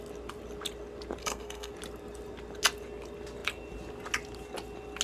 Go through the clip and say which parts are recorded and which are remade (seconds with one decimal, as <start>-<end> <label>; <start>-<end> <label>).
0.0-1.2 recorded; 1.2-1.7 remade; 1.7-5.0 recorded